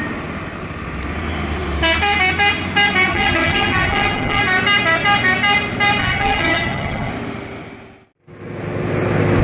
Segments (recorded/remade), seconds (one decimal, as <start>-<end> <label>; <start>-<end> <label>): 0.0-3.1 recorded; 3.1-4.4 remade; 4.4-6.0 recorded; 6.0-7.1 remade; 7.1-9.4 recorded